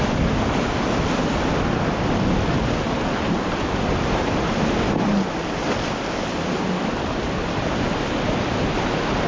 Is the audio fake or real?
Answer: real